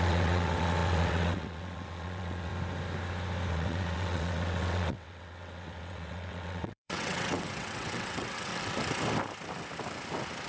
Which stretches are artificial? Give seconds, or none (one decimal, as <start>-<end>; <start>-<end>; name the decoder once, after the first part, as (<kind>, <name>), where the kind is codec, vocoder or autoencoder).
0.0-2.5 (vocoder, WaveNeXt); 3.5-8.5